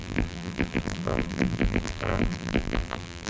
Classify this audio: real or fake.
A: fake